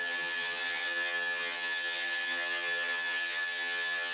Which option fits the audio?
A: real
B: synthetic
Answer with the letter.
B